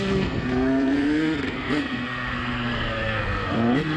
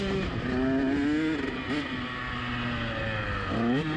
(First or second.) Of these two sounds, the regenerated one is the first